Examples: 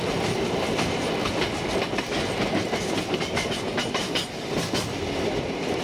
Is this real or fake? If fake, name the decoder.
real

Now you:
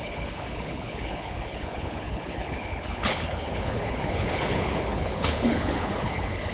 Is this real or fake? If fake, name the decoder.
fake, codec, HILCodec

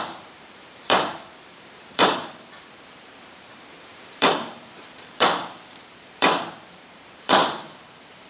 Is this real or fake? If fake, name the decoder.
fake, vocoder, BigVGAN v2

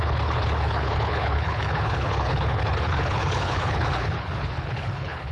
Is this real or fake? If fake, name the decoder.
fake, codec, HILCodec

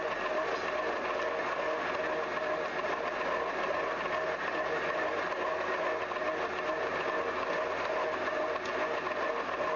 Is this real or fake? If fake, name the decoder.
real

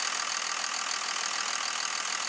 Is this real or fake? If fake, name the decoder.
real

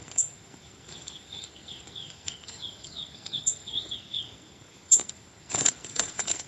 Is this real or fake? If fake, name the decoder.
fake, codec, SNAC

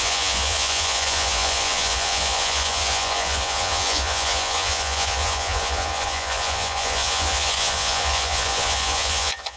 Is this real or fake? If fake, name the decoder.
fake, vocoder, Vocos